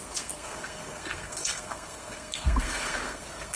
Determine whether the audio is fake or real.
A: fake